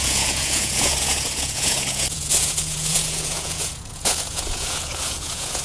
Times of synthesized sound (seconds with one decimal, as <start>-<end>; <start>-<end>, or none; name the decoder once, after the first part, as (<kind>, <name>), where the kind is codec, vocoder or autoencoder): 0.0-5.6 (vocoder, Vocos)